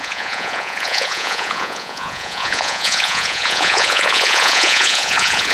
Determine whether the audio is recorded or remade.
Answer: remade